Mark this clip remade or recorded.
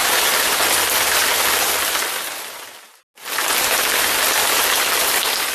recorded